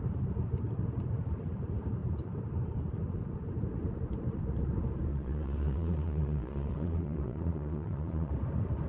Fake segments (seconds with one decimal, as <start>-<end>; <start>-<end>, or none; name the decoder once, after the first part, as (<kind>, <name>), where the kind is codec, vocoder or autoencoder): 5.1-8.3 (vocoder, Vocos)